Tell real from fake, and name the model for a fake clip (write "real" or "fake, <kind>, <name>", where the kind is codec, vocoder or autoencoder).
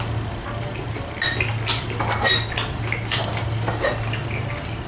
real